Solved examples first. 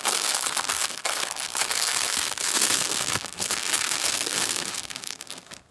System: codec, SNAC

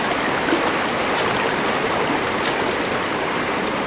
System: none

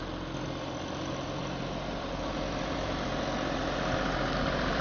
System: vocoder, BigVGAN v2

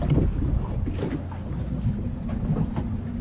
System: none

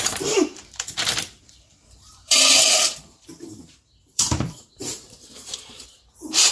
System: vocoder, BigVGAN v2